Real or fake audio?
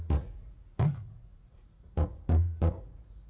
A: fake